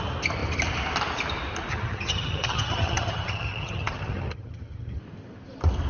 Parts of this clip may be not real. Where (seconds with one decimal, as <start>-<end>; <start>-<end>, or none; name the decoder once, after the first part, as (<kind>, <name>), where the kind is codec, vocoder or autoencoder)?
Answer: 1.7-5.0 (vocoder, HiFi-GAN)